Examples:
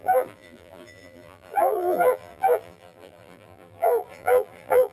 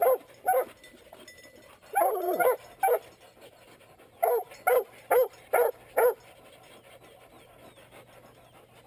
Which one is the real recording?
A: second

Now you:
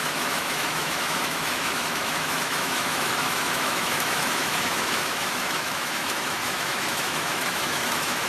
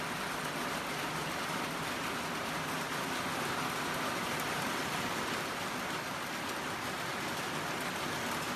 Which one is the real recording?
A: second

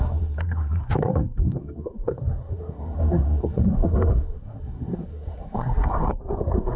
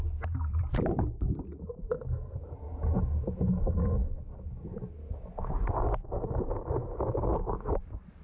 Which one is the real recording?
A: second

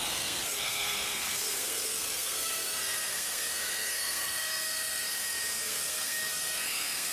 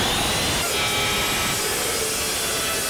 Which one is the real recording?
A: second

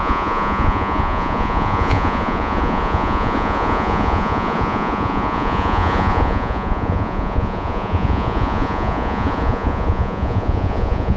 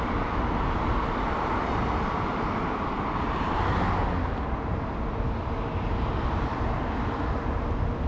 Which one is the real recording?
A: second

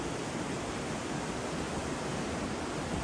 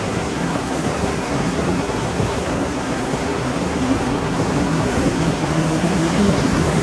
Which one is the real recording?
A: first